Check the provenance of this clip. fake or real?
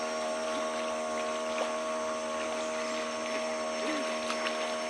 real